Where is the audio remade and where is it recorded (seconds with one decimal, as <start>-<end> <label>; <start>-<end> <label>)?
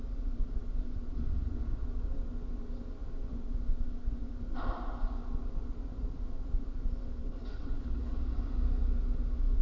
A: 0.0-7.2 recorded; 7.2-8.2 remade; 8.2-9.6 recorded